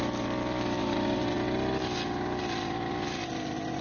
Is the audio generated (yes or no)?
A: no